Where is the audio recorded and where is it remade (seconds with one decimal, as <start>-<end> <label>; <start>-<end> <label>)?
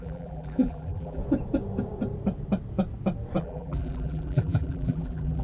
0.0-1.2 remade; 1.2-3.4 recorded; 3.4-5.4 remade